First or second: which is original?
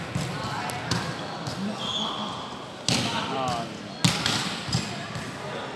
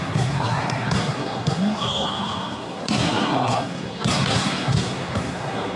first